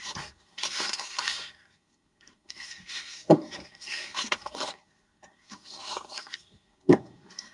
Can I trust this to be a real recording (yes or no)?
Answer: no